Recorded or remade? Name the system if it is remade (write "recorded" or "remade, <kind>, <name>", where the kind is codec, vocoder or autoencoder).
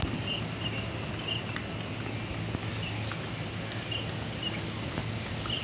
recorded